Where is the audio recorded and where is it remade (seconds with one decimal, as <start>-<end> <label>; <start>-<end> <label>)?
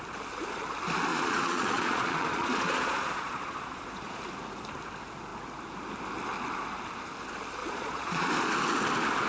0.0-1.1 recorded; 1.1-4.2 remade; 4.2-7.6 recorded; 7.6-8.3 remade; 8.3-9.3 recorded